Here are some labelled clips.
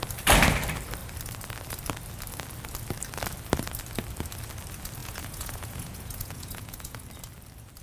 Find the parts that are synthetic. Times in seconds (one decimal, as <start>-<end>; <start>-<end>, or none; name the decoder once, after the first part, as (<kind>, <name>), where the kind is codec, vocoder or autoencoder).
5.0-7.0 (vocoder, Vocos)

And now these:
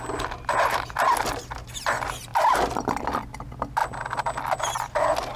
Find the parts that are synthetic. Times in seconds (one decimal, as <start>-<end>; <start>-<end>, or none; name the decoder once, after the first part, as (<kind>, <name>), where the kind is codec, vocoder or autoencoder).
none

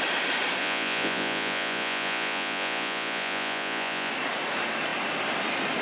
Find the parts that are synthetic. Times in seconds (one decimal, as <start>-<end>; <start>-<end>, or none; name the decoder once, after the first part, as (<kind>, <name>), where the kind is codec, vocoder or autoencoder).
0.6-4.1 (vocoder, Vocos)